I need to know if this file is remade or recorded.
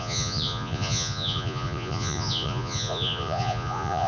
remade